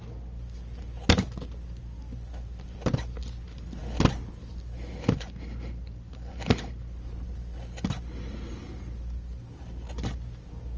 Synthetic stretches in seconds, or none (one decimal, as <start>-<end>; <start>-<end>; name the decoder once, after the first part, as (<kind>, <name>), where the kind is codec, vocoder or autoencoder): none